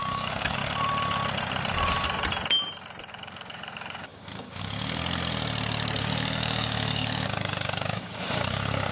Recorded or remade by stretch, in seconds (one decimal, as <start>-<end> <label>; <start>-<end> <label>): 0.0-0.6 remade; 0.6-3.1 recorded; 3.1-5.0 remade; 5.0-6.0 recorded; 6.0-8.9 remade